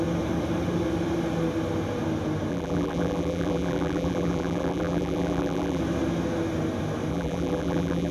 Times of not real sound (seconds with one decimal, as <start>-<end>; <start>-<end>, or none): 2.5-5.8; 7.1-8.1